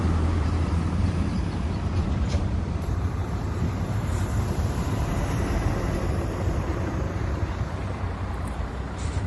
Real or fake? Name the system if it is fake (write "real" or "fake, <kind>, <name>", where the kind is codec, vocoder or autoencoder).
fake, vocoder, BigVGAN v2